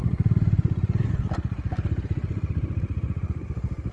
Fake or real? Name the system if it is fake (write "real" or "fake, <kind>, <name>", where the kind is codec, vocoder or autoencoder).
real